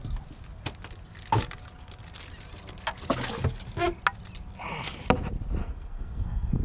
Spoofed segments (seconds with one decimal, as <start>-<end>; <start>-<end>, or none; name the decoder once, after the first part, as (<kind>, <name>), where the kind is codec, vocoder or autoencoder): 5.6-6.6 (codec, SNAC)